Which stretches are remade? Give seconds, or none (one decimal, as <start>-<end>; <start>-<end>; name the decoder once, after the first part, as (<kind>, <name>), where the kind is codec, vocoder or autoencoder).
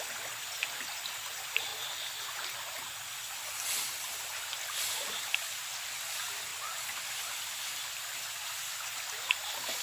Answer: none